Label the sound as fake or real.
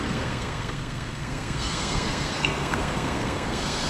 fake